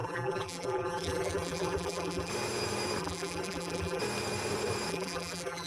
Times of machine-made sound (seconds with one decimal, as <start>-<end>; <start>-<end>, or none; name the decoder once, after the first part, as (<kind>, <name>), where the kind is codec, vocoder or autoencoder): 0.0-2.3 (vocoder, BigVGAN v2); 3.0-4.0; 4.9-5.7